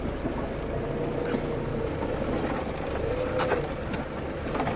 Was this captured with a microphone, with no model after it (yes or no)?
yes